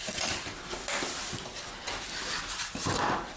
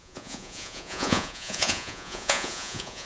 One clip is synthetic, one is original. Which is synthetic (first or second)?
second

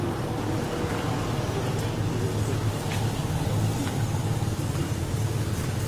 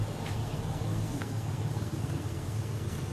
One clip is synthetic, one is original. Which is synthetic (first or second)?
second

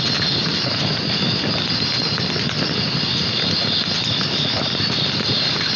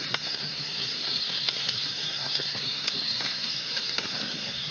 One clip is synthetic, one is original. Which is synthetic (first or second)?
second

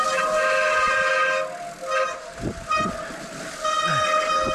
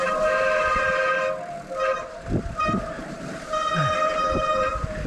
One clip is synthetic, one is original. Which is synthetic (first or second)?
second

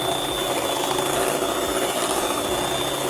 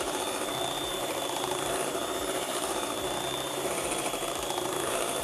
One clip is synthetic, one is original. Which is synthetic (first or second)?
second